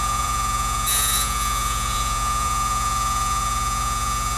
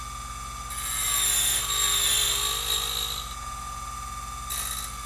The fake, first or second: first